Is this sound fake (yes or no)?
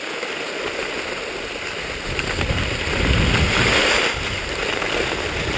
no